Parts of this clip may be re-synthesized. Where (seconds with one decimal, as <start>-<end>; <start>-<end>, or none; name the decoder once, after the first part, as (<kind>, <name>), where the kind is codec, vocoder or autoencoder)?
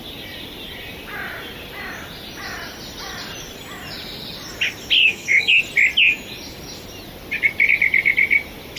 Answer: 5.0-5.6 (codec, SNAC)